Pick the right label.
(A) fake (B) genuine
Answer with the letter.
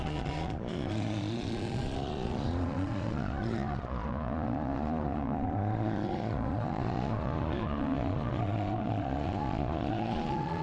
A